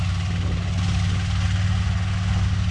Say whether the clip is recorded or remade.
recorded